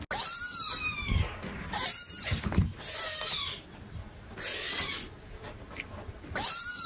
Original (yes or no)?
yes